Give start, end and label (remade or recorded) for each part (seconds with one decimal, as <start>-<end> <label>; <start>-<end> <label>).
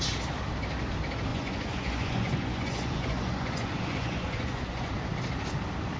0.0-1.3 recorded; 1.3-4.9 remade; 4.9-6.0 recorded